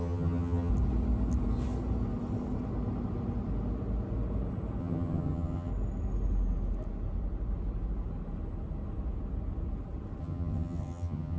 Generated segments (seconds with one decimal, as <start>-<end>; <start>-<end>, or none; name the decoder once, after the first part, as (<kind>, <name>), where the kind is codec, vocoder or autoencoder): 0.0-0.7 (vocoder, HiFi-GAN); 4.8-5.7; 10.2-11.4